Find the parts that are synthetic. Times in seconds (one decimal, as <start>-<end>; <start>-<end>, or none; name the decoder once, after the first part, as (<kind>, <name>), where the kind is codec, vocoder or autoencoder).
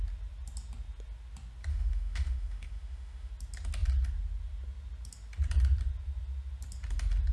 1.7-3.3 (autoencoder, DAC-VAE)